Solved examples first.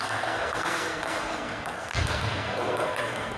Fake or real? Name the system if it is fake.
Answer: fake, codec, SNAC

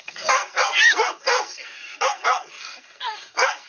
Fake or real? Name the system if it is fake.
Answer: fake, codec, SNAC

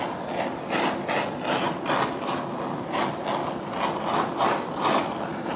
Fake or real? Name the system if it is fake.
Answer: real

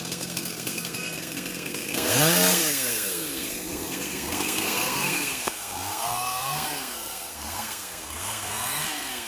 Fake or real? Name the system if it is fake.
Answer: fake, codec, SNAC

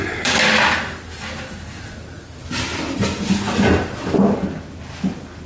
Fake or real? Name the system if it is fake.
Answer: real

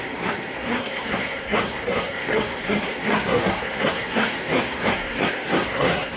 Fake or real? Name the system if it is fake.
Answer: fake, codec, SNAC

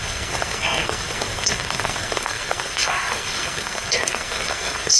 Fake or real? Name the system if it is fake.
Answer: fake, codec, SNAC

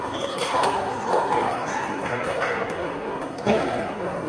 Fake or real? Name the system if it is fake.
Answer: fake, codec, SNAC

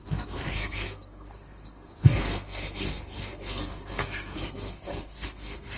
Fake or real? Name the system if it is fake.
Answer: fake, codec, SNAC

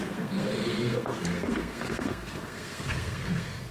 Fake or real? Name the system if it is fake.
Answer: fake, codec, SNAC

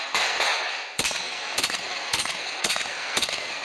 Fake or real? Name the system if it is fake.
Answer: fake, codec, SNAC